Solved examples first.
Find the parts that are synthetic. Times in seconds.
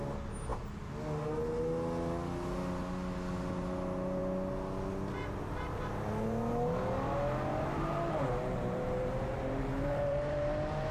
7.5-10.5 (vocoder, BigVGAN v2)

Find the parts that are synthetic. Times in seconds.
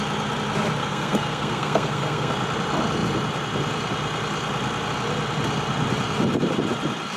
0.8-2.3 (codec, SNAC)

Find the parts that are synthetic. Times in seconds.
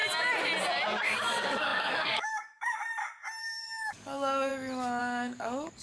1.0-2.8 (codec, DAC); 3.4-4.5; 5.0-5.8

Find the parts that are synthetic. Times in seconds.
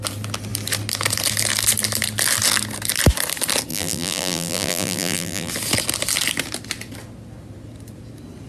3.7-5.5 (vocoder, BigVGAN v2)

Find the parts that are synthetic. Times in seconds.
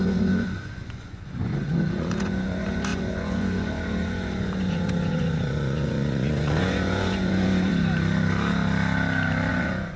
0.0-7.7 (vocoder, Vocos); 9.5-10.0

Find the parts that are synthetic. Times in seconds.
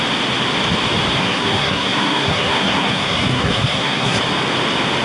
1.2-4.2 (codec, SNAC)